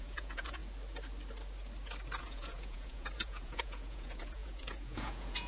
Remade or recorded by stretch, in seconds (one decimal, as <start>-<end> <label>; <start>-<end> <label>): 0.0-0.6 remade; 0.6-2.2 recorded; 2.2-5.5 remade